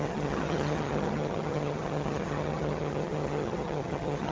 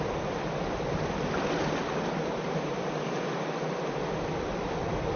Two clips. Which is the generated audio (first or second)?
first